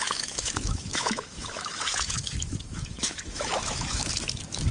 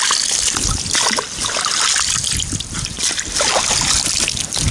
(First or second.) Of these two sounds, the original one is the second